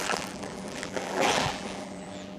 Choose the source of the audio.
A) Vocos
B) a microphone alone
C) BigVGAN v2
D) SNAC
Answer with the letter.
C